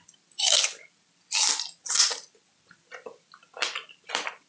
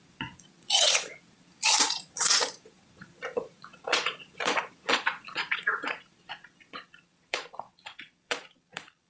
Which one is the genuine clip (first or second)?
first